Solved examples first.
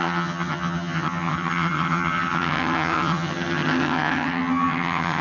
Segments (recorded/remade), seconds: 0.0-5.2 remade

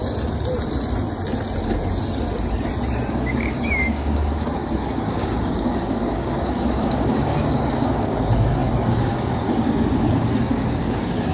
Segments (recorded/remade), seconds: 0.0-3.1 recorded; 3.1-11.3 remade

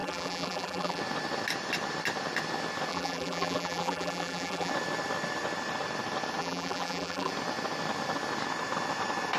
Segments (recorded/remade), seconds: 0.0-1.0 remade; 1.0-2.9 recorded; 2.9-4.7 remade; 4.7-6.4 recorded; 6.4-7.3 remade; 7.3-9.4 recorded

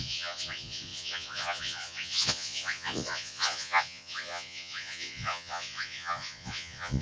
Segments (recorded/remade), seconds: 0.0-7.0 remade

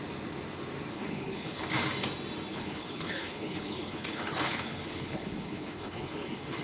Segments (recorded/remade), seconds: 0.0-0.9 recorded; 0.9-1.6 remade; 1.6-2.5 recorded; 2.5-6.6 remade

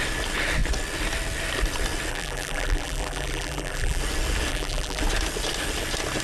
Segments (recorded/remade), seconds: 0.0-2.1 recorded; 2.1-4.0 remade; 4.0-4.5 recorded; 4.5-5.0 remade; 5.0-6.2 recorded